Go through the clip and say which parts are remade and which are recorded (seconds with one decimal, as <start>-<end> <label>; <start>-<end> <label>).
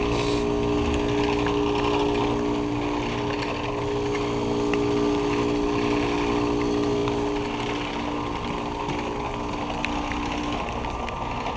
0.0-11.6 recorded